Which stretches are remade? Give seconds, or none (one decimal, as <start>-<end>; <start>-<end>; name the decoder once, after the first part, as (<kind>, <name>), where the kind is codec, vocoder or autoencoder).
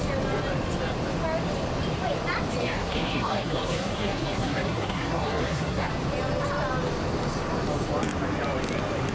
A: 2.6-5.9 (codec, SNAC)